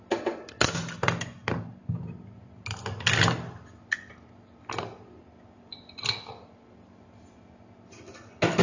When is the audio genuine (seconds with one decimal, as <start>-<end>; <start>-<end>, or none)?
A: 0.0-8.6